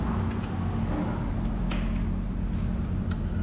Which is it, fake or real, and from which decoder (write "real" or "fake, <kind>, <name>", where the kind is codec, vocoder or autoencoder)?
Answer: real